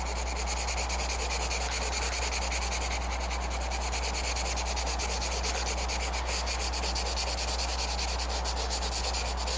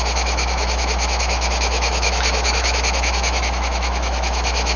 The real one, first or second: first